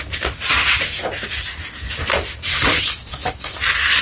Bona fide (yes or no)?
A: yes